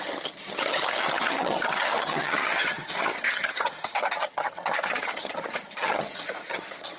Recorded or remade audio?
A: remade